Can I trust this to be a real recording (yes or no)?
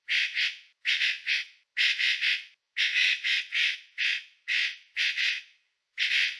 yes